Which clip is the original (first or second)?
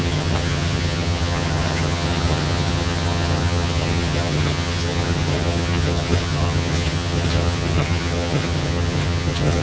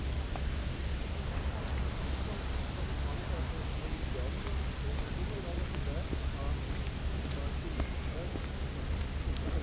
second